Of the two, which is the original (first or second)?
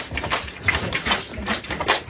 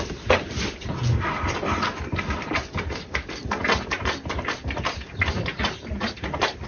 second